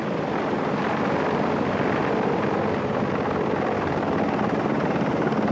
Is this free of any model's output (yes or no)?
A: yes